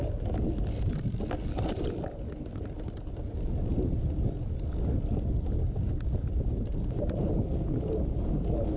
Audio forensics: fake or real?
real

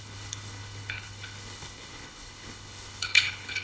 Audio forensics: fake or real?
fake